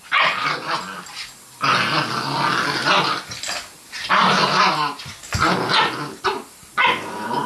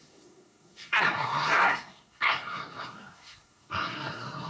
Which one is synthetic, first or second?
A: second